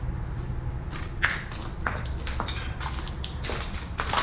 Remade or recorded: recorded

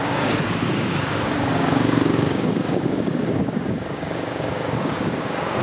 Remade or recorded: remade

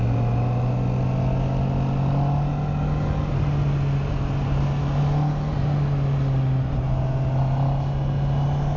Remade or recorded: recorded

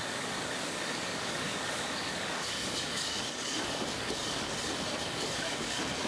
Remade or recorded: remade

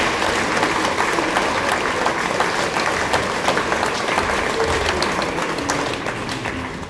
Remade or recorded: recorded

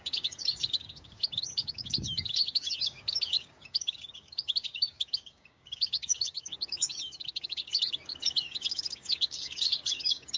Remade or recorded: remade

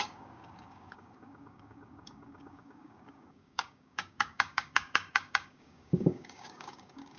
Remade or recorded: remade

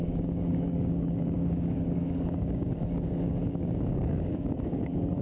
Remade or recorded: remade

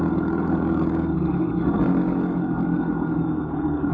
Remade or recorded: remade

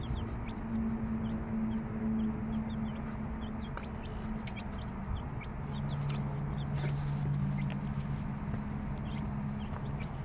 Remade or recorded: recorded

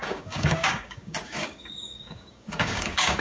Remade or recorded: remade